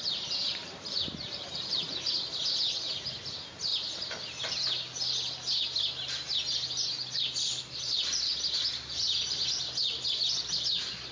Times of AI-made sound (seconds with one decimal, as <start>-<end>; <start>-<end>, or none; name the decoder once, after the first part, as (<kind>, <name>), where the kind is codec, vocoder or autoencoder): 0.6-1.8 (vocoder, BigVGAN v2); 3.7-4.4